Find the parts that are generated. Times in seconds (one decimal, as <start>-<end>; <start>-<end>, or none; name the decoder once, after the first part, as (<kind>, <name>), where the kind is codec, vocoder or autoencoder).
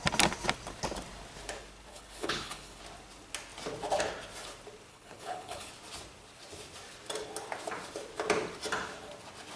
1.9-2.8 (codec, HILCodec); 4.9-5.7